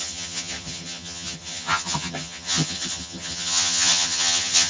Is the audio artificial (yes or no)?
yes